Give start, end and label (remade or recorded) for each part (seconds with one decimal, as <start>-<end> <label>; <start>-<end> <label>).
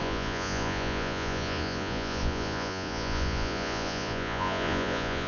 0.0-5.3 remade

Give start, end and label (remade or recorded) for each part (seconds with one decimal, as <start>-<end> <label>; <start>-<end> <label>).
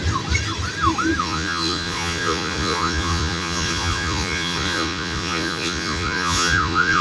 0.0-1.2 recorded; 1.2-7.0 remade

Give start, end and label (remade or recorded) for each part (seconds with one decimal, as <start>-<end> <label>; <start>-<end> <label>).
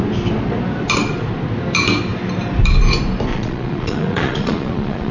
0.0-3.3 recorded; 3.3-5.1 remade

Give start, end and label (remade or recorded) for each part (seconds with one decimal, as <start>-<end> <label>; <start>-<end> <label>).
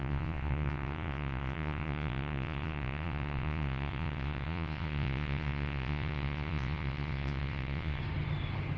0.0-8.0 remade; 8.0-8.8 recorded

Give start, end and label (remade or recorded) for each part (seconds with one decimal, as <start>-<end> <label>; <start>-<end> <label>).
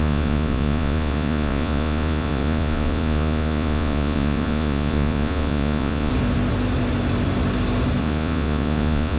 0.0-6.1 remade; 6.1-8.0 recorded; 8.0-9.2 remade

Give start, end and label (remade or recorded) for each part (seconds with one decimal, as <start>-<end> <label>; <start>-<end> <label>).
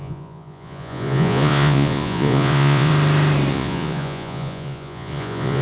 0.0-2.9 remade; 2.9-3.5 recorded; 3.5-5.6 remade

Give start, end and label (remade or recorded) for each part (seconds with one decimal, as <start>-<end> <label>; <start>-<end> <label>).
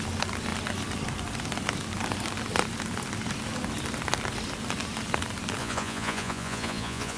0.0-5.6 recorded; 5.6-7.2 remade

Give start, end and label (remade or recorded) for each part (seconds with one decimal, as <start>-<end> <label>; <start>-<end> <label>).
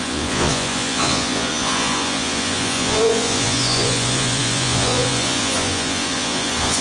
0.0-6.8 remade